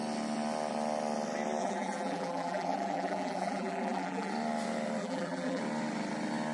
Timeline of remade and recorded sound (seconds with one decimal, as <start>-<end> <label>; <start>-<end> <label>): 0.0-1.6 recorded; 1.6-4.3 remade; 4.3-5.0 recorded; 5.0-5.6 remade; 5.6-6.5 recorded